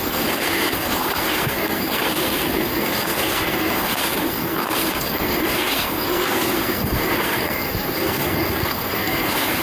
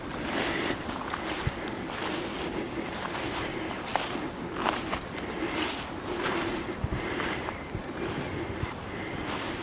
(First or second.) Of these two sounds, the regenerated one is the first